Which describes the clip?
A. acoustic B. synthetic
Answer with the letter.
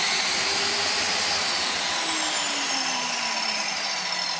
A